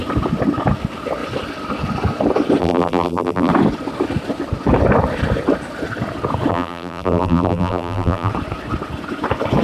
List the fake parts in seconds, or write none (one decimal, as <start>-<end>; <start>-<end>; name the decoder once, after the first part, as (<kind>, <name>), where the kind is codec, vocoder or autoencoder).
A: 2.6-3.5 (vocoder, BigVGAN v2); 6.5-8.3